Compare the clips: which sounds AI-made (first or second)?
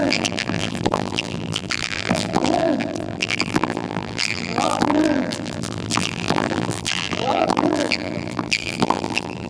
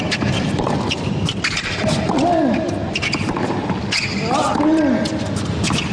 first